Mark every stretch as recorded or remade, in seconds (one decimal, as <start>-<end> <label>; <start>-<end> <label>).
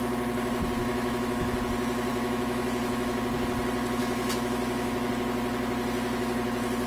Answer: 0.0-0.8 recorded; 0.8-1.6 remade; 1.6-2.1 recorded; 2.1-3.2 remade; 3.2-4.0 recorded; 4.0-5.1 remade; 5.1-6.9 recorded